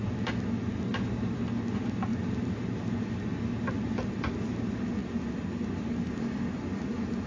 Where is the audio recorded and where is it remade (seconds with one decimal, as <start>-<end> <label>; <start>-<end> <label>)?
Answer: 0.0-0.9 recorded; 0.9-1.4 remade; 1.4-2.1 recorded; 2.1-3.4 remade; 3.4-7.3 recorded